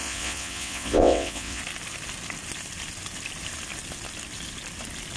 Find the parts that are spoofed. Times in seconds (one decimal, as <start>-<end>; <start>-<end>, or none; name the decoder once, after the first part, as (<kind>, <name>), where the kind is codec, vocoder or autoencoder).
0.0-1.6 (vocoder, WaveNeXt)